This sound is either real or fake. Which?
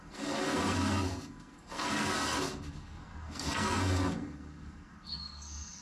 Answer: fake